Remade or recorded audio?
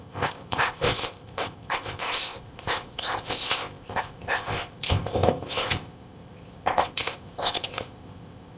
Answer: remade